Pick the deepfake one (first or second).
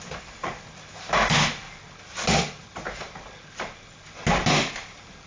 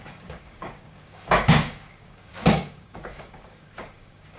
second